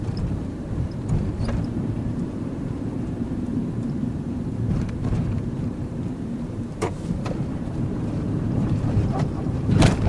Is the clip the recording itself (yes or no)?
no